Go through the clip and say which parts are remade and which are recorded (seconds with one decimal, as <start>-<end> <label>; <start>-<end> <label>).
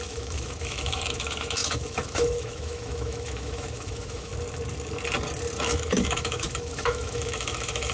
0.0-4.3 remade; 4.3-5.6 recorded; 5.6-7.9 remade